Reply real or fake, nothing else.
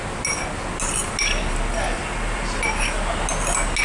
real